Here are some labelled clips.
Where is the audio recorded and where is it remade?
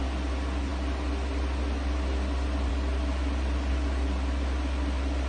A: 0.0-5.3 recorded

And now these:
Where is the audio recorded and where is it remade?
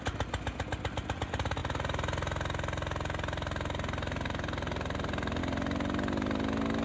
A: 0.0-6.8 recorded